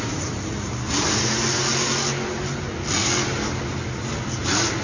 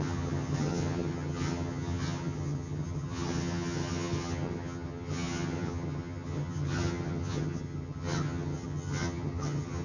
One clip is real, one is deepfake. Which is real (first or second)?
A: first